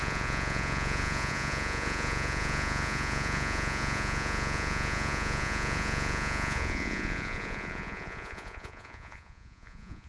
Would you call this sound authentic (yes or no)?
no